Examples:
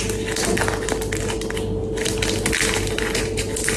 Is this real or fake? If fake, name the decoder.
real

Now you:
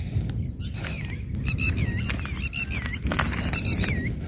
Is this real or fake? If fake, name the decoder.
real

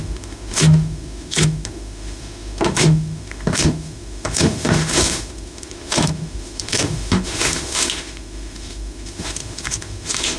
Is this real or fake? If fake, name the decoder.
fake, autoencoder, DAC-VAE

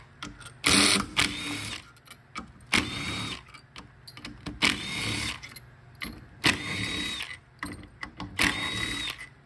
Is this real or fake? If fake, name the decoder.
real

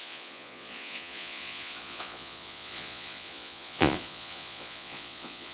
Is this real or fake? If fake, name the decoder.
fake, vocoder, Vocos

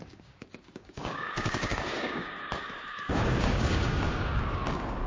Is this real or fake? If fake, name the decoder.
fake, codec, DAC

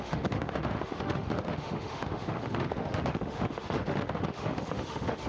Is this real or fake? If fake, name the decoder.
fake, autoencoder, DAC-VAE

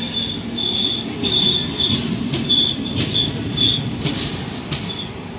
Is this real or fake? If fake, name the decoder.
real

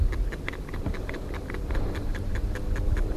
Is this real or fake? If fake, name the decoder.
fake, vocoder, BigVGAN v2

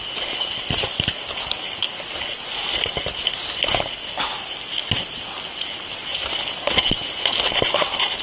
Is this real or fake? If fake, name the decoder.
real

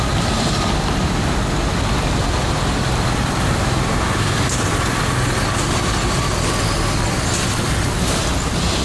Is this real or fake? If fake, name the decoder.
real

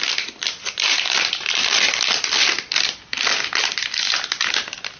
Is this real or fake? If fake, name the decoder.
fake, vocoder, BigVGAN v2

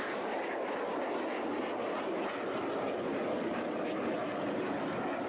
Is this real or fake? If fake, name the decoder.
real